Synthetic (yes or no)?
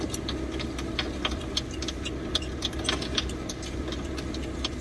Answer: no